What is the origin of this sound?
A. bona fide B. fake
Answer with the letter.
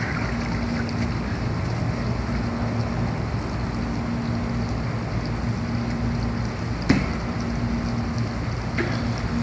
A